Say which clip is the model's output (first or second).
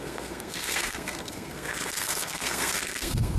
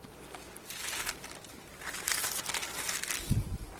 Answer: first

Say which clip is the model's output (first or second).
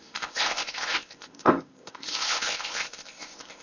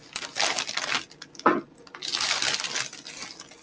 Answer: first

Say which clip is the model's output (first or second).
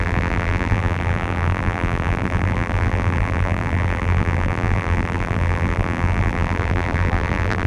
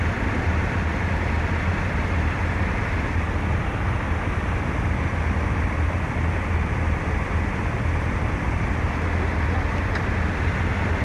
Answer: first